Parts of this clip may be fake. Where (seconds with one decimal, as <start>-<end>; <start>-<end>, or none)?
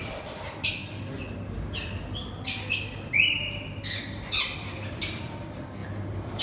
0.0-0.8; 4.6-6.4